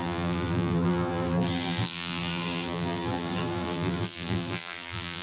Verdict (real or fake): fake